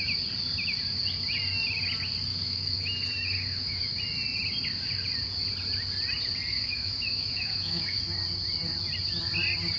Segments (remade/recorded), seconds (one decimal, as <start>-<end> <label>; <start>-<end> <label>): 0.0-2.3 recorded; 2.3-4.0 remade; 4.0-6.5 recorded; 6.5-8.0 remade; 8.0-9.8 recorded